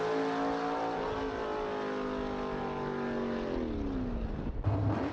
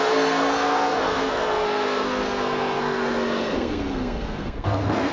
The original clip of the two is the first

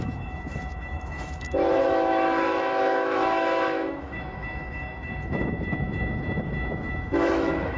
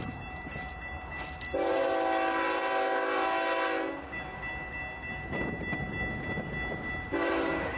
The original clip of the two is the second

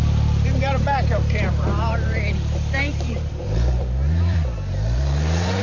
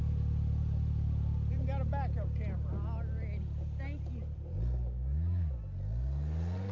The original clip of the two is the second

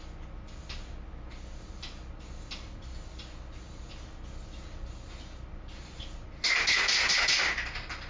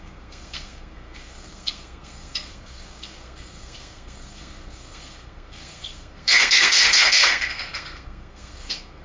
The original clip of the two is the first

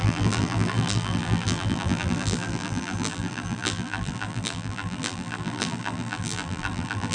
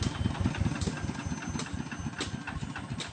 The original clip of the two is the second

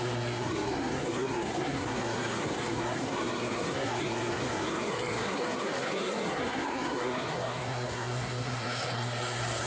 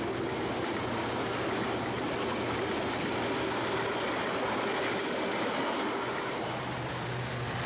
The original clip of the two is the second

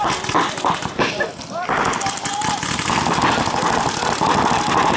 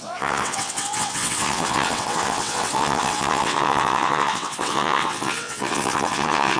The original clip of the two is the first